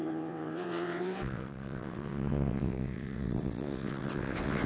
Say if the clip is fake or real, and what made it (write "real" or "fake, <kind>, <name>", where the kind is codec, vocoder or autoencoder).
fake, vocoder, WaveNeXt